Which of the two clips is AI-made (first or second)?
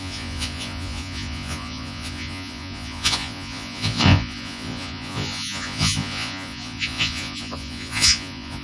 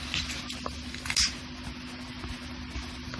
first